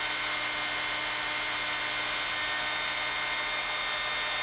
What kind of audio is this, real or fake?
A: real